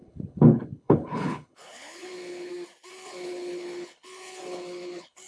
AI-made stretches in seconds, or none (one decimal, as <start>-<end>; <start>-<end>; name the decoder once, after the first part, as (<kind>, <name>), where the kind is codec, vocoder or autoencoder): 0.0-2.5 (codec, HILCodec); 2.9-5.3